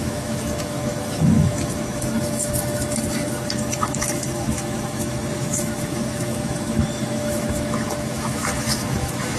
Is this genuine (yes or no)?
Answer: no